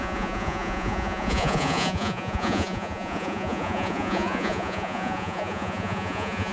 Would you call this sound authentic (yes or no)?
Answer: no